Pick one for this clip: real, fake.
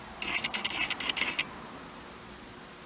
real